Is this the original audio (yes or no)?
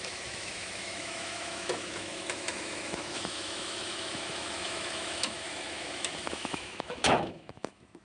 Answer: no